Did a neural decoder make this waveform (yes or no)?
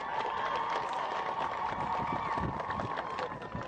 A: no